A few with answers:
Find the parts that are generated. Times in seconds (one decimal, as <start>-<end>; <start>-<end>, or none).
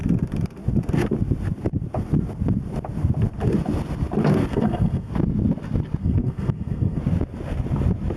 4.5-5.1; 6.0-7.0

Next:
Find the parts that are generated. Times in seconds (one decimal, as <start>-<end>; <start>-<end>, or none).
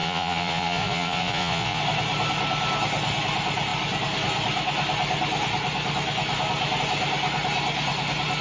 0.0-1.8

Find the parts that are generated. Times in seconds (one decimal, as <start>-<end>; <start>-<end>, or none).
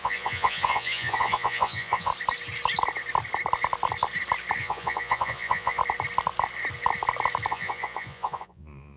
0.0-2.1; 4.6-5.8; 7.5-9.0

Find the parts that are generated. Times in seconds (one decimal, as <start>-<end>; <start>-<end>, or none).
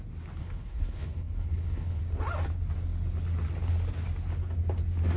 0.4-2.0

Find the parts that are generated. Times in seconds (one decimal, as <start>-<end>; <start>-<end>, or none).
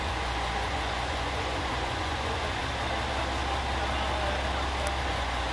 0.0-2.6; 5.1-5.5